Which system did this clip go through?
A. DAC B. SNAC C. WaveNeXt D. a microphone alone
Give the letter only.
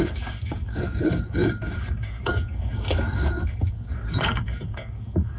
A